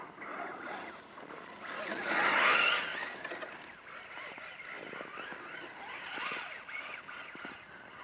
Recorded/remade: recorded